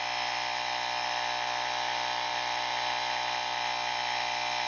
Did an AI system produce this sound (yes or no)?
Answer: no